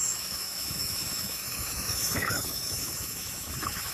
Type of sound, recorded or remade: remade